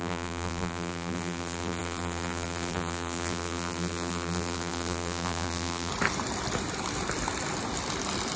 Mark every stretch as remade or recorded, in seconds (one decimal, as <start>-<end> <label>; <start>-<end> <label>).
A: 0.0-5.9 remade; 5.9-8.4 recorded